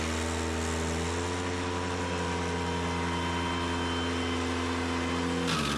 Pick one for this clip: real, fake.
real